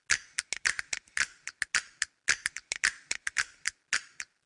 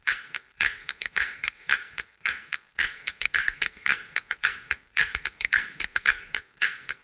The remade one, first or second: second